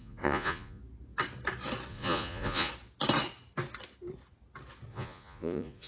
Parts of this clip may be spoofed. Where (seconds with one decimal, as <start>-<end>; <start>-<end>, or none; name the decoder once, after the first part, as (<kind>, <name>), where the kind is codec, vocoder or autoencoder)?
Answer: 0.0-0.8 (vocoder, Vocos); 1.9-2.7; 4.9-5.9